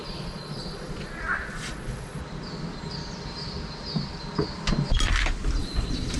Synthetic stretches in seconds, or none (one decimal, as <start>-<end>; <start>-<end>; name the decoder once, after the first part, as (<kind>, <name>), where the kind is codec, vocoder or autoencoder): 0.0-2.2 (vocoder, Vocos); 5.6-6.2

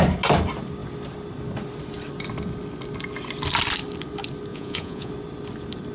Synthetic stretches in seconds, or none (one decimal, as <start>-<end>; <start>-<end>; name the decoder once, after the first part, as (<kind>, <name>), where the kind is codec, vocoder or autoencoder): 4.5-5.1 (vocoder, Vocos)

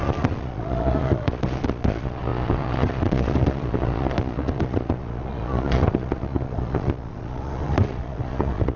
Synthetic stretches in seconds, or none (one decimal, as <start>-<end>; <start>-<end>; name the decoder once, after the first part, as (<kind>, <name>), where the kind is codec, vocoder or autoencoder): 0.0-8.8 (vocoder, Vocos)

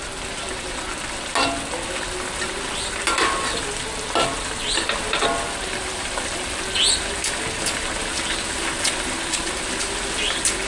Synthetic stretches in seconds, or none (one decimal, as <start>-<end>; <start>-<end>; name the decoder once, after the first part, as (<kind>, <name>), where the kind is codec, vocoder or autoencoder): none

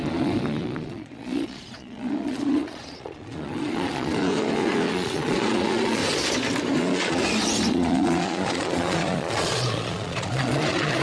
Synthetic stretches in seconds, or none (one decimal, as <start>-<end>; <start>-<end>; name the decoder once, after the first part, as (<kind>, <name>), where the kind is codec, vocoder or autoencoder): 0.0-6.0 (vocoder, Vocos); 6.8-7.2; 7.7-11.0

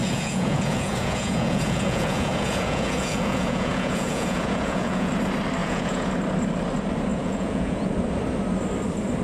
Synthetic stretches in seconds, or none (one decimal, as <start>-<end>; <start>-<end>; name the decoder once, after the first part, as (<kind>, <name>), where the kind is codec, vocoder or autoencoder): 0.0-5.1 (vocoder, Vocos); 5.6-6.1; 7.1-7.9

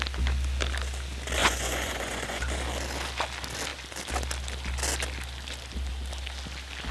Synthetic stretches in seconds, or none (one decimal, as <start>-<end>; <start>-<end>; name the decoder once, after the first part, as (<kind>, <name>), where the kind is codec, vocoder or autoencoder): 1.4-2.4 (vocoder, Vocos)